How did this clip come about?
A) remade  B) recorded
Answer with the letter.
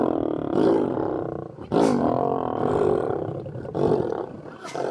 A